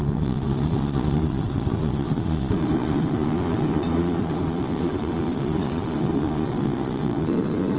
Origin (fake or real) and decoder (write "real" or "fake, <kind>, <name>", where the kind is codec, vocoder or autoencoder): fake, vocoder, Vocos